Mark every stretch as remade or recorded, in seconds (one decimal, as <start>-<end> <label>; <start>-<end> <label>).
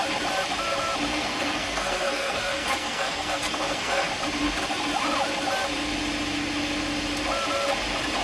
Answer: 0.0-1.1 recorded; 1.1-4.1 remade; 4.1-8.2 recorded